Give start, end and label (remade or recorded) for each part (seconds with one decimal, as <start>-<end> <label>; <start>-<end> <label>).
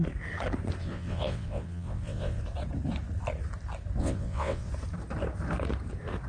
0.0-0.8 recorded; 0.8-2.4 remade; 2.4-4.0 recorded; 4.0-4.7 remade; 4.7-6.3 recorded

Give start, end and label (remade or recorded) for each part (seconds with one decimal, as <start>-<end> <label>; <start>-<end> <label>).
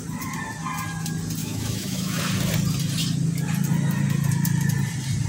0.0-1.4 recorded; 1.4-2.2 remade; 2.2-5.3 recorded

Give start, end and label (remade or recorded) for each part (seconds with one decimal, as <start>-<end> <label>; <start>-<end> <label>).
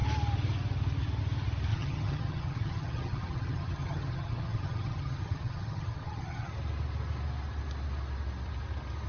0.0-1.7 recorded; 1.7-6.5 remade; 6.5-9.1 recorded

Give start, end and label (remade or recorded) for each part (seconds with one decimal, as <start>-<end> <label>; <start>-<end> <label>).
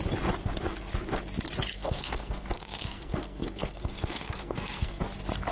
0.0-1.7 recorded; 1.7-5.0 remade; 5.0-5.5 recorded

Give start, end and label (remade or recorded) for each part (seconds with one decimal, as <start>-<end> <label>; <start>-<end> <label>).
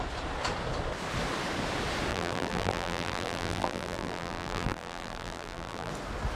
0.0-2.1 recorded; 2.1-5.9 remade; 5.9-6.4 recorded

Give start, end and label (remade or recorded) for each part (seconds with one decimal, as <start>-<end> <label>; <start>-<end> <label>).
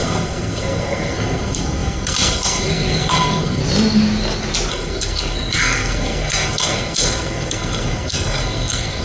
0.0-3.6 remade; 3.6-4.7 recorded; 4.7-9.0 remade